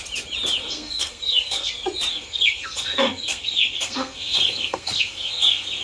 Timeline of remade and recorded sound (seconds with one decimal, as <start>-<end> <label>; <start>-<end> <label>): 0.0-0.6 recorded; 0.6-1.7 remade; 1.7-2.1 recorded; 2.1-5.8 remade